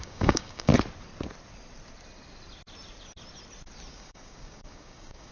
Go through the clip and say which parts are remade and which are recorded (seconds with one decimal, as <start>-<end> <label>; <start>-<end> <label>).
0.0-0.7 remade; 0.7-3.9 recorded; 3.9-5.3 remade